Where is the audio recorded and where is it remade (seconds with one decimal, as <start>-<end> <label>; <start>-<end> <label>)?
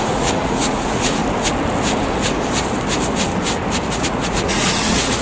0.0-1.2 remade; 1.2-3.9 recorded; 3.9-5.2 remade